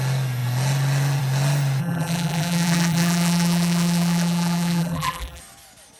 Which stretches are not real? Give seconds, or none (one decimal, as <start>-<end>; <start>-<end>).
1.8-5.4